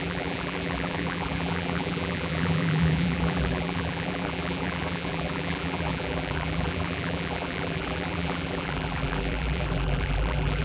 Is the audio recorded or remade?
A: remade